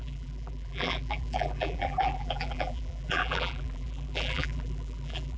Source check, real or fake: fake